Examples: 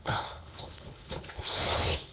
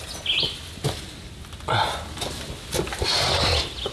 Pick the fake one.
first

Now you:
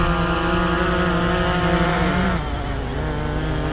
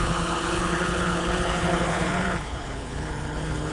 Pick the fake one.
second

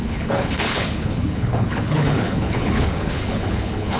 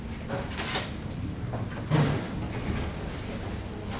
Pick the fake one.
first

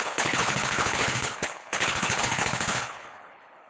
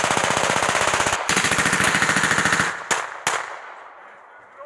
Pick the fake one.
first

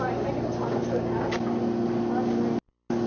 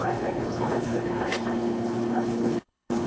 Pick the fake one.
second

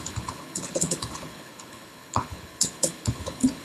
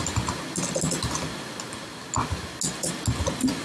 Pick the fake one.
first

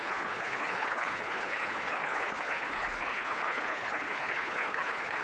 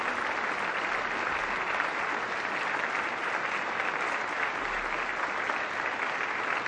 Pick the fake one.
first